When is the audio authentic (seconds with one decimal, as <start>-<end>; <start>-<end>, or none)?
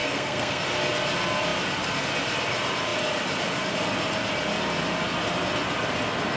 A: 0.6-6.4